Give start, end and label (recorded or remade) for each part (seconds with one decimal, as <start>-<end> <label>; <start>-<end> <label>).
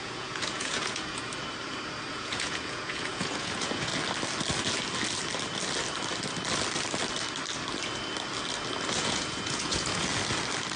0.0-1.3 remade; 1.3-2.1 recorded; 2.1-3.9 remade; 3.9-9.0 recorded; 9.0-10.1 remade; 10.1-10.8 recorded